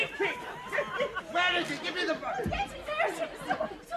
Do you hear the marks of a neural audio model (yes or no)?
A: no